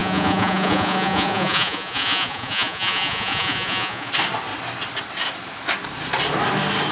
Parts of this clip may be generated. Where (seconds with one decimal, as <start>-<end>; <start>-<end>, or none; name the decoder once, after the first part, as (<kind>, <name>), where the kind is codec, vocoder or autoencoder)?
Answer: 0.0-4.1 (vocoder, Vocos)